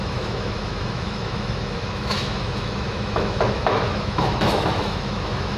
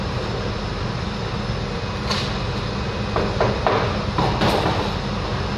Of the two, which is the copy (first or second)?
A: first